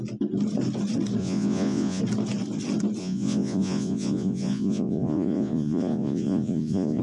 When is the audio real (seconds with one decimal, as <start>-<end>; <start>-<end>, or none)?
0.0-1.2; 2.0-3.0

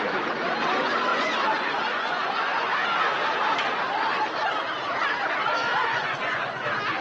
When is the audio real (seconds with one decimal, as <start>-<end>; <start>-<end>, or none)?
0.0-1.1; 2.7-5.7; 6.6-7.0

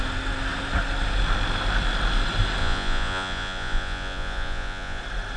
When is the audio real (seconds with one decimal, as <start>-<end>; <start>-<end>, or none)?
0.0-2.6; 5.0-5.4

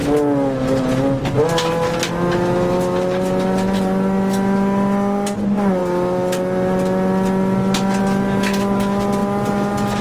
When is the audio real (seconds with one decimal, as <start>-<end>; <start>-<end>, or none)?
0.0-10.0

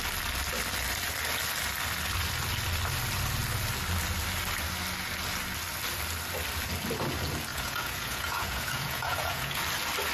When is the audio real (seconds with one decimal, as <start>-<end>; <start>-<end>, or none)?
0.0-7.5; 9.6-10.1

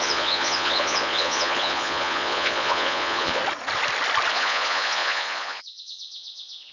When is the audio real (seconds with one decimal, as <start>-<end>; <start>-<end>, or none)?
3.4-4.3

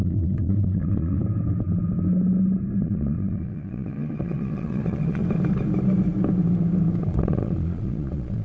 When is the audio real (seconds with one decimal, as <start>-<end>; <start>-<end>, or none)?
1.2-2.8; 5.2-7.0